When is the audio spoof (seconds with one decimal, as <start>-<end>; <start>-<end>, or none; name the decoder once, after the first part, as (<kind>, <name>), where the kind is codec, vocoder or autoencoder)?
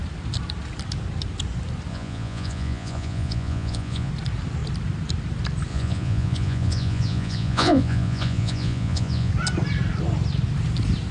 1.9-4.1 (vocoder, Vocos); 5.7-9.3